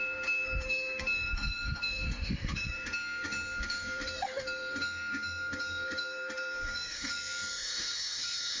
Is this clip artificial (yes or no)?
yes